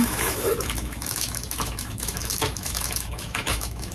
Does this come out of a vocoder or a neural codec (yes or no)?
yes